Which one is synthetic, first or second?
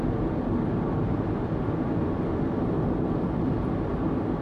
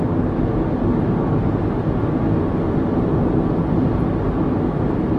first